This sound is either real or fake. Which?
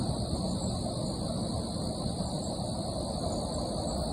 real